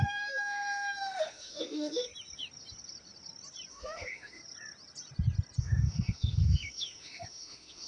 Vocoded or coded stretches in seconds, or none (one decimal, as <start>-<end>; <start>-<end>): 0.0-2.1; 3.7-4.4; 5.6-7.9